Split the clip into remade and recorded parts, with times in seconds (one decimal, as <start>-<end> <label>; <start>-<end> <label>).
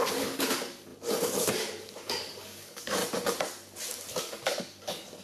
0.0-3.0 remade; 3.0-4.1 recorded; 4.1-5.2 remade